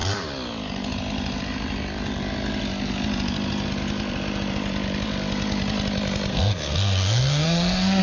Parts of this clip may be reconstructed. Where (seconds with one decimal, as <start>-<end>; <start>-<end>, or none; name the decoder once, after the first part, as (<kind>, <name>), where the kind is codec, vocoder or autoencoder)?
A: 6.3-8.0 (codec, SNAC)